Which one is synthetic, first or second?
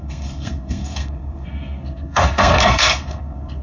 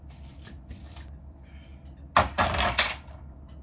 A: first